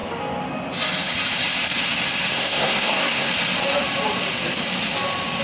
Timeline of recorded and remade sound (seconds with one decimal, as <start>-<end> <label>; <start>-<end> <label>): 0.0-2.3 recorded; 2.3-3.3 remade; 3.3-5.4 recorded